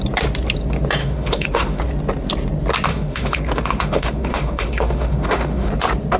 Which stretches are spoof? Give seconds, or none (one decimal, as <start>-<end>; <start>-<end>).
1.0-1.8; 2.9-5.7